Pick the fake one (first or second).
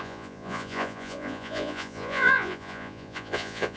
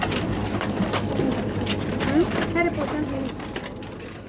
first